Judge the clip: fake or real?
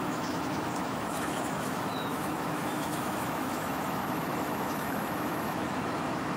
fake